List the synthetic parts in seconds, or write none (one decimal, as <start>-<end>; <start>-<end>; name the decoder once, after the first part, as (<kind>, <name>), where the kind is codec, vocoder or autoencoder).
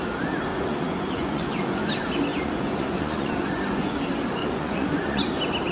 0.5-1.9 (vocoder, Vocos); 2.3-4.0; 4.4-5.2